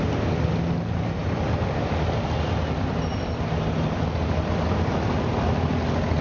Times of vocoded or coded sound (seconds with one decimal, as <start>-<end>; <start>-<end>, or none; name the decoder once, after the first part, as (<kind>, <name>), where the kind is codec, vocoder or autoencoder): none